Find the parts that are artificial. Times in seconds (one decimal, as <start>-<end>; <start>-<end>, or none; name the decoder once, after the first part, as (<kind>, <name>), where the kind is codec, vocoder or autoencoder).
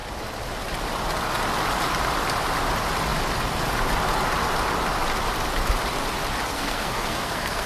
6.5-7.7 (codec, SNAC)